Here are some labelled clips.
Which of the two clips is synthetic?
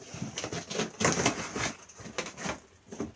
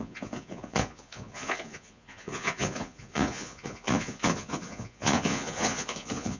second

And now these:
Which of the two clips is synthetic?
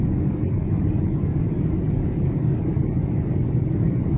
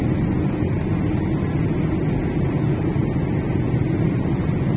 first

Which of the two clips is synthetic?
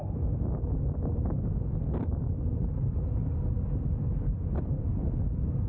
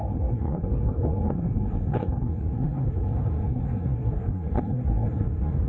second